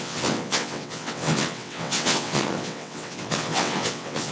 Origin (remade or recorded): remade